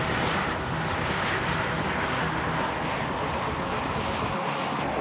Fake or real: real